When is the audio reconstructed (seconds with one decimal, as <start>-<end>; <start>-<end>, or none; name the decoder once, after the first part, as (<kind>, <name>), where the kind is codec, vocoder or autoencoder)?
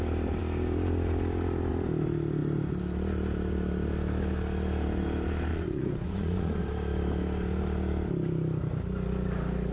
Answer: 5.5-6.6 (vocoder, Vocos)